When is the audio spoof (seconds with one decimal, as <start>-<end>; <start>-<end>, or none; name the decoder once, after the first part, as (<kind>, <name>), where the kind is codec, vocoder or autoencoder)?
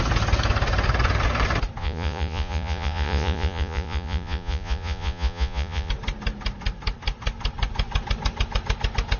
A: 1.8-5.9 (vocoder, Vocos)